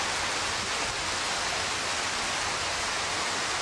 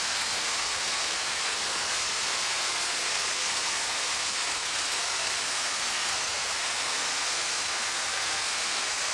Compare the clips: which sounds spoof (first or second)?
second